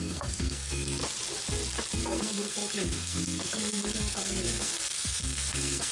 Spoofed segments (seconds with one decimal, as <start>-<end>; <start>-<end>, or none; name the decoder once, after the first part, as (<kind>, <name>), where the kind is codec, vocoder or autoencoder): 0.0-1.0 (codec, SNAC); 2.0-5.9